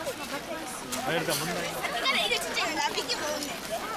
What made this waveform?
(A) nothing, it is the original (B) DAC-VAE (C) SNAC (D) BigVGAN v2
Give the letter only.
A